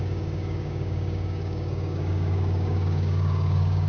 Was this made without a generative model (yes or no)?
no